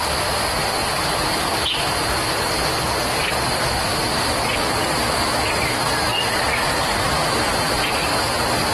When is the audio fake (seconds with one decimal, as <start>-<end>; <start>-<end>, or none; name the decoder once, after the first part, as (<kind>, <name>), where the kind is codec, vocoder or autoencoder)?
0.8-1.4 (vocoder, BigVGAN v2); 4.0-4.6; 6.1-8.1